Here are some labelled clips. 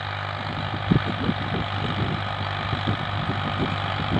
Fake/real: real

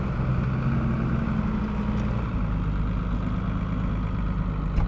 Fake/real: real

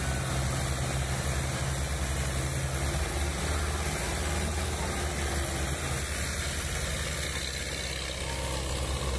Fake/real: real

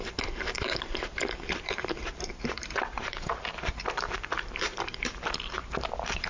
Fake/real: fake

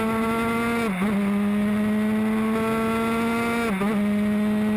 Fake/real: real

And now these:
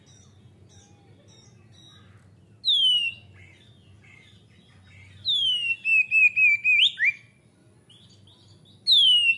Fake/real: real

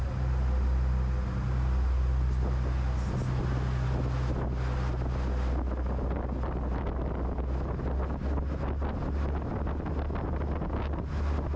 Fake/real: real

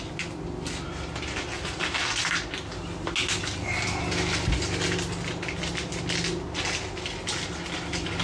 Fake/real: real